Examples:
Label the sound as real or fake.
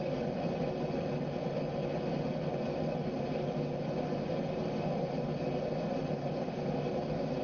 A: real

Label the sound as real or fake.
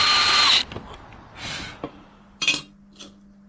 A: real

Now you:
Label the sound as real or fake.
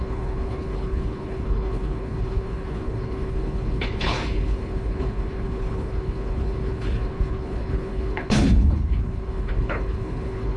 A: fake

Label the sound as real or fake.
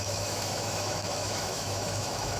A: fake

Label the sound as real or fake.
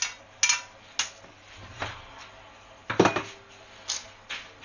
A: real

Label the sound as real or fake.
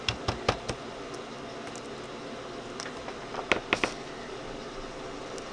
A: real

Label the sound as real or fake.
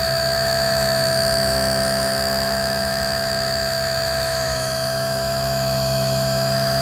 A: fake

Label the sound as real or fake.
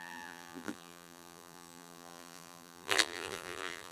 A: fake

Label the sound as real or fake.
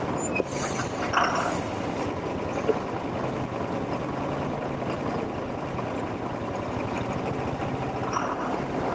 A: real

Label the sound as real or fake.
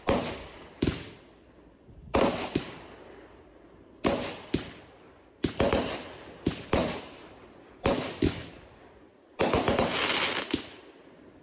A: real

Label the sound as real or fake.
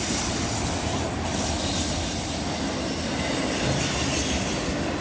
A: real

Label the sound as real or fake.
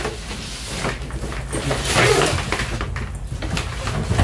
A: real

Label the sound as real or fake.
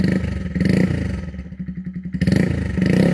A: real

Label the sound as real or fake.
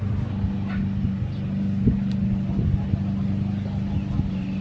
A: real